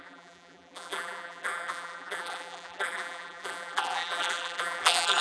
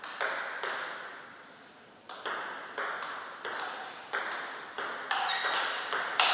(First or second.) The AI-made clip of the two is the first